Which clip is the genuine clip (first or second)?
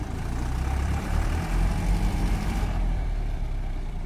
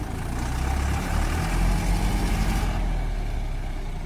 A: second